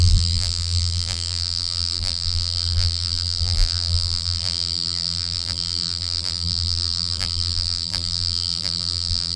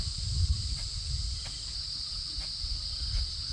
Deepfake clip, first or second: first